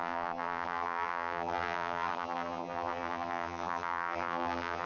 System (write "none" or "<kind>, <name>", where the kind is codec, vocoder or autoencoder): vocoder, BigVGAN v2